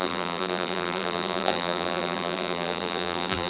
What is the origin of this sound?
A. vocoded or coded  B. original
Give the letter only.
A